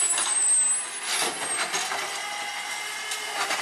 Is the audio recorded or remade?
recorded